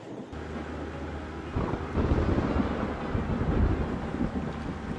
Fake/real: real